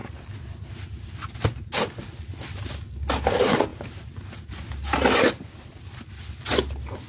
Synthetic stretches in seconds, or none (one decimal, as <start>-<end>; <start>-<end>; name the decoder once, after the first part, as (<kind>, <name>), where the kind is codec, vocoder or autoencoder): 3.3-3.7 (vocoder, BigVGAN v2)